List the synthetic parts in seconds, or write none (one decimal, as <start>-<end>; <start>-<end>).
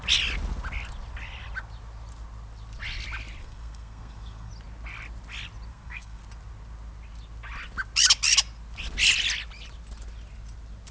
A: 3.4-4.5; 5.7-6.2